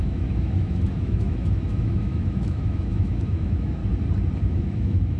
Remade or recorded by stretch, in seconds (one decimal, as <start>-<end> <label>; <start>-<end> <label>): 0.0-3.8 remade; 3.8-4.4 recorded; 4.4-5.2 remade